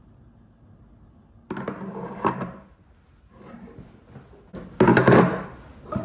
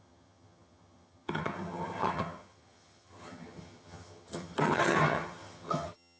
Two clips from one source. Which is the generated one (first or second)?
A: second